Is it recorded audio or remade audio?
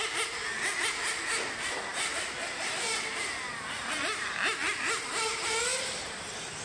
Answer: recorded